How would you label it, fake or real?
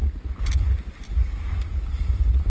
real